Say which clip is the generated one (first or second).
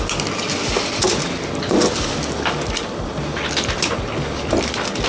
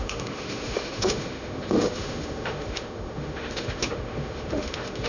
second